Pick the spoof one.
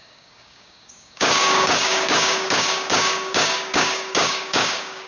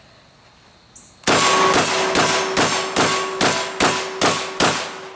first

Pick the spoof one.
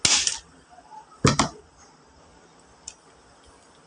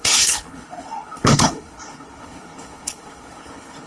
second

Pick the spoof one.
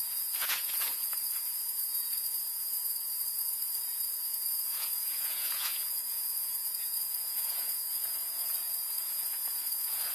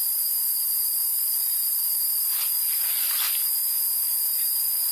first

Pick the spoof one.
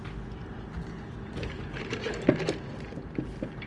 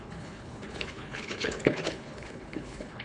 second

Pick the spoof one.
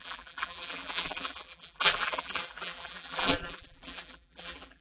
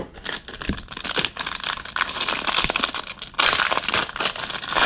first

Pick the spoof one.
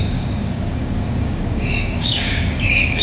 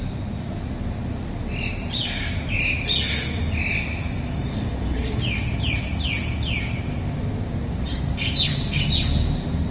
first